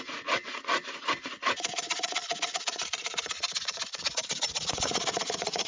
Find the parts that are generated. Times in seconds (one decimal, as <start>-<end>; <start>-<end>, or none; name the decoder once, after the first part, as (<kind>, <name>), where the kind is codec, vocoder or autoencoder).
0.0-5.7 (vocoder, Vocos)